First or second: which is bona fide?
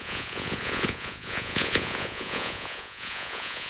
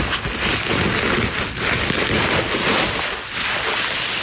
second